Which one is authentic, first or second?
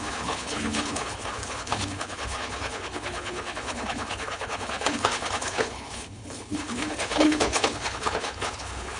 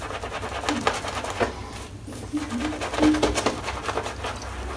second